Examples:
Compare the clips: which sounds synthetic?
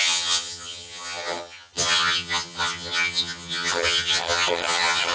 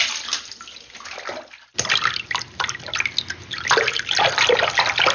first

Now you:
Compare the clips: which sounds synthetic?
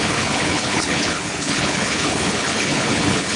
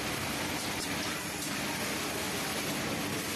first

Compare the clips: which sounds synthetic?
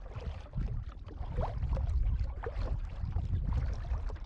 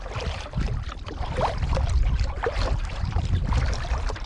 second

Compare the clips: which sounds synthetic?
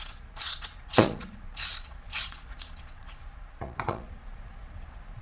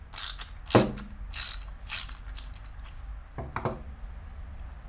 first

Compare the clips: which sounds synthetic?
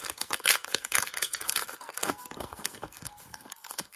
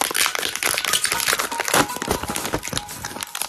first